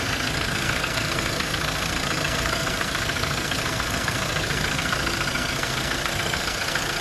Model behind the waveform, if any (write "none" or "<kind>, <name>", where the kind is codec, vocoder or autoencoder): codec, SNAC